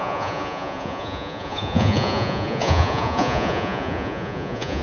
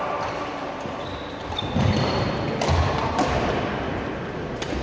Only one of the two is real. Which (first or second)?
second